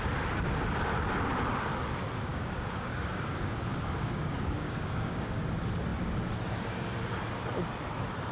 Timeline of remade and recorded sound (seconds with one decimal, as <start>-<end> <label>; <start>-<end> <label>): 0.0-2.3 recorded; 2.3-5.4 remade; 5.4-8.3 recorded